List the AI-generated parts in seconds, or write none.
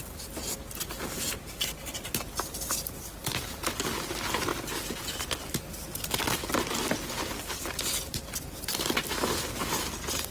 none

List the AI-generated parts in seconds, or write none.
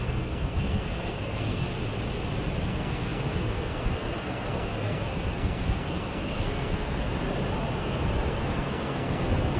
0.0-1.8 (codec, SNAC); 2.6-7.1; 7.8-9.6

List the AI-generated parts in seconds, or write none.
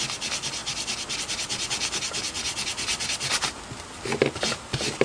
2.9-3.5 (vocoder, BigVGAN v2)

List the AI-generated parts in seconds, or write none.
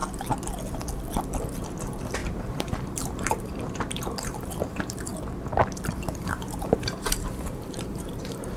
1.4-5.1 (vocoder, BigVGAN v2); 6.1-8.6